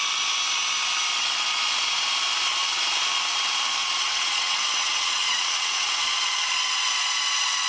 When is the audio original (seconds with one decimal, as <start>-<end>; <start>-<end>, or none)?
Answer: 0.0-3.8; 6.0-7.7